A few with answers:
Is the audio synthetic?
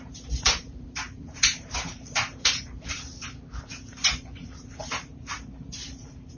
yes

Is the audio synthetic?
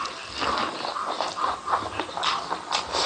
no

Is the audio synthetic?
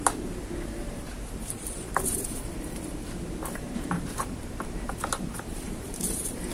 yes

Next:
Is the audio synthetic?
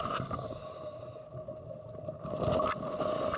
no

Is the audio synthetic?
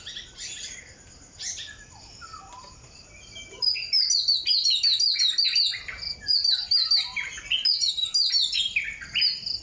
no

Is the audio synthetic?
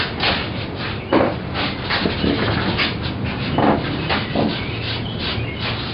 no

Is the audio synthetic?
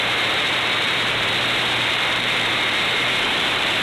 yes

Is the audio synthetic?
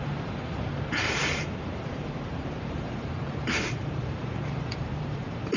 yes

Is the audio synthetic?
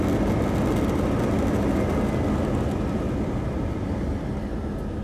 no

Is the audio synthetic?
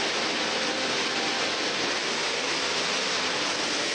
no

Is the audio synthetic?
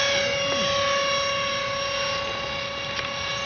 no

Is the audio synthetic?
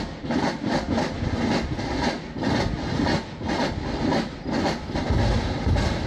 no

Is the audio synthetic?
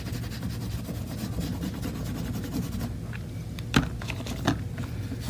no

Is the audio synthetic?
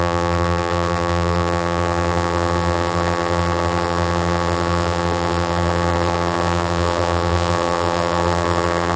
yes